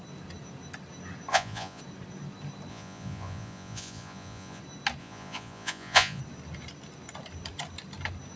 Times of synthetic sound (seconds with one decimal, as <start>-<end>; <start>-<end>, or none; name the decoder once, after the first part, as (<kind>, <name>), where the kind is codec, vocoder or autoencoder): 1.3-1.8 (vocoder, Vocos); 2.7-4.6; 5.0-6.2